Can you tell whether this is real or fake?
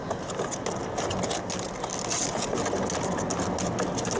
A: real